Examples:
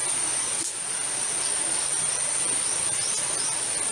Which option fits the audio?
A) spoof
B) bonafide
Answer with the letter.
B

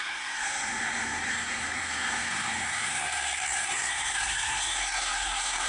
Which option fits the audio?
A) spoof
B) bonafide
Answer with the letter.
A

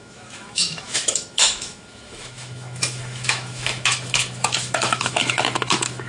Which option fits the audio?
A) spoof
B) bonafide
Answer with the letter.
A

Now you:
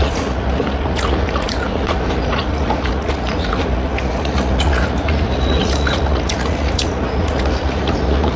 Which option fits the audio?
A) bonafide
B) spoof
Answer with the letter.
B